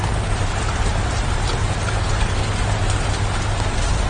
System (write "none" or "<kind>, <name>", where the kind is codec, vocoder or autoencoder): none